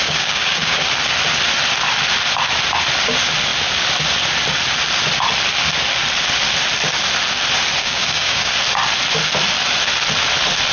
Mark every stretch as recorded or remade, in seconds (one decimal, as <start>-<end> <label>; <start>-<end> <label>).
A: 0.0-0.8 remade; 0.8-7.8 recorded; 7.8-8.5 remade; 8.5-10.7 recorded